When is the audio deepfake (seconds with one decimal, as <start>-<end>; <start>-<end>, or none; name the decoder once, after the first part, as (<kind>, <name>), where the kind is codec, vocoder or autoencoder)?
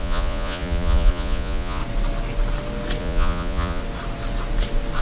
0.0-1.8 (vocoder, Vocos); 3.0-3.8